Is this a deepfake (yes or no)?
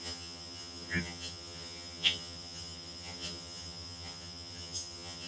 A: yes